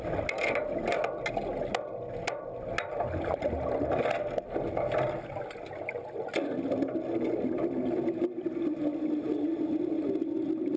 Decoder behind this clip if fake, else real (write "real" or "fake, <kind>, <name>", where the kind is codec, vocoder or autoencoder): real